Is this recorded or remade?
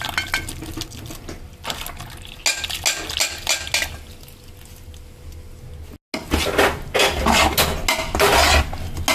recorded